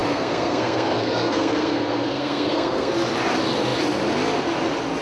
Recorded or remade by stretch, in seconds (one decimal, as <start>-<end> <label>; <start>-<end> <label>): 0.0-2.9 remade; 2.9-5.0 recorded